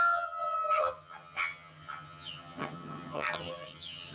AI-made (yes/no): yes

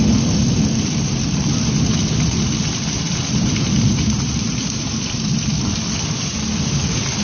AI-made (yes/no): yes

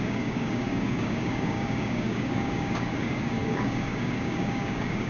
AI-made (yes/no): yes